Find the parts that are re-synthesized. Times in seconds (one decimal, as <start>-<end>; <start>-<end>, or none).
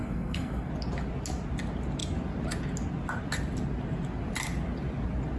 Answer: 0.0-0.7